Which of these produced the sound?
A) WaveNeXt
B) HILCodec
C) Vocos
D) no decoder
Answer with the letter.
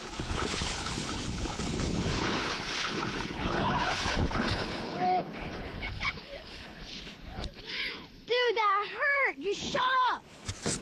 B